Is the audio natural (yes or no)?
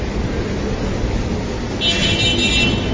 yes